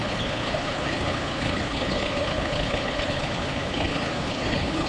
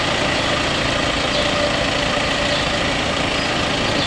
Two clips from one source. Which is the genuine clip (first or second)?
second